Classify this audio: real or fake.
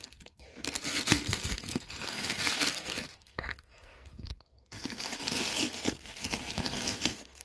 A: fake